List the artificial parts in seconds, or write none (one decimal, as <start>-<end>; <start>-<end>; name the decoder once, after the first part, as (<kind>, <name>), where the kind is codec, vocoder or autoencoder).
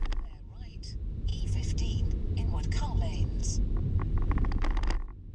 0.0-3.4 (vocoder, BigVGAN v2)